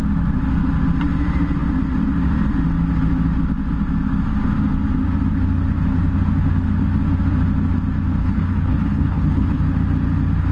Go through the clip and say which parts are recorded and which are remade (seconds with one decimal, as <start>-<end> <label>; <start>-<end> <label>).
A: 0.0-8.2 recorded; 8.2-9.6 remade; 9.6-10.5 recorded